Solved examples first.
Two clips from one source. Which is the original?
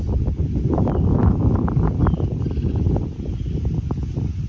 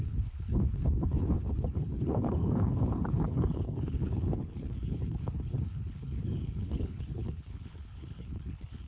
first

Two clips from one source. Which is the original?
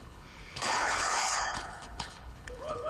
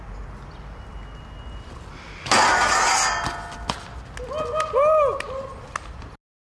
second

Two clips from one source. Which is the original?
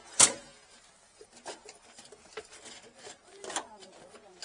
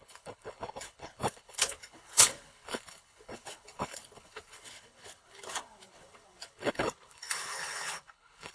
first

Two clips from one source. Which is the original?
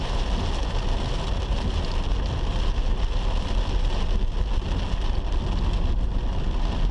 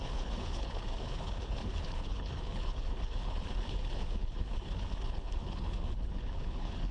first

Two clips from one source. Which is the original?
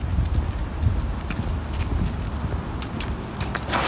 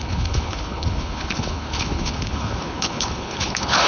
first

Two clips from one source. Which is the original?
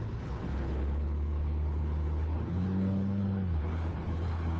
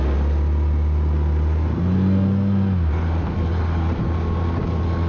second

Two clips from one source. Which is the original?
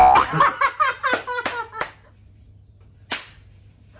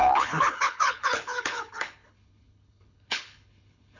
first